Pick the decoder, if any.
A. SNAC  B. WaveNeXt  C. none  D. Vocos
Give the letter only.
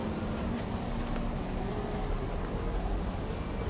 C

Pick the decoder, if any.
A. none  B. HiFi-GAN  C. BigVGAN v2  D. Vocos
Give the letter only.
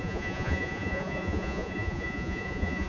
D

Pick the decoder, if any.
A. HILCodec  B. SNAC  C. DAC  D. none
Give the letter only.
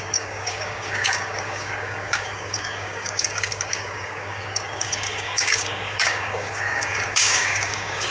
C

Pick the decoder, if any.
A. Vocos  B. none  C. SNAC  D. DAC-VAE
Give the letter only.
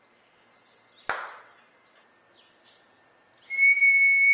B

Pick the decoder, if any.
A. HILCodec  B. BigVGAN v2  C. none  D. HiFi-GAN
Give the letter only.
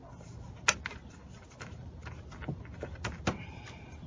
C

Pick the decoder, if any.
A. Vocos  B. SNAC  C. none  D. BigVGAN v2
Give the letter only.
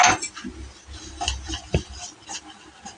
C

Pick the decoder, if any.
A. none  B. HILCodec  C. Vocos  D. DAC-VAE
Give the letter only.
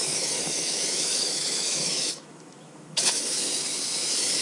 D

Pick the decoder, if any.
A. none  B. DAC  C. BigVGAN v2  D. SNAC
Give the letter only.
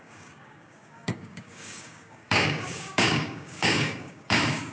B